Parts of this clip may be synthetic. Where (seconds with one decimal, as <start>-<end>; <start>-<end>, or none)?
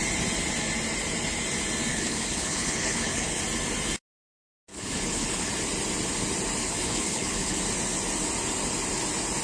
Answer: 1.9-3.4; 4.7-5.5; 6.6-7.6